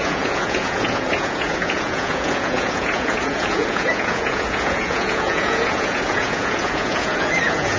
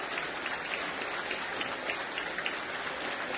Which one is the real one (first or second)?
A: second